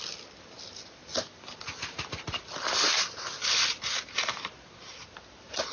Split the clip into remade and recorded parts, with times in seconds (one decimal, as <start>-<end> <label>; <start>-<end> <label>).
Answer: 0.0-5.7 recorded